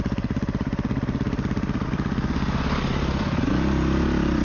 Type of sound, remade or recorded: recorded